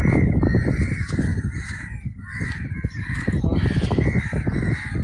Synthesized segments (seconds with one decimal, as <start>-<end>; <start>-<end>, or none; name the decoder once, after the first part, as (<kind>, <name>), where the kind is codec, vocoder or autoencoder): 1.3-1.9 (vocoder, BigVGAN v2)